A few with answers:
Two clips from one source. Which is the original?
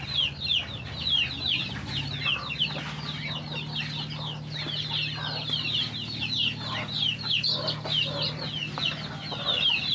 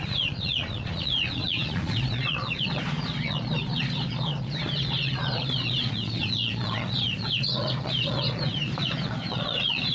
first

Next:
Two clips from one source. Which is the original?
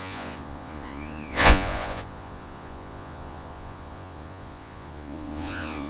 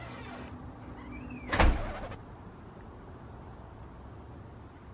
second